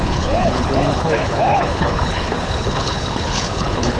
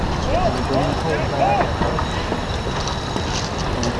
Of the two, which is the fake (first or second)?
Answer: first